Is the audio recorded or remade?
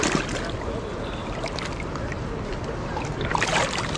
remade